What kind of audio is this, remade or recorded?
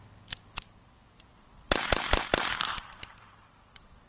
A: recorded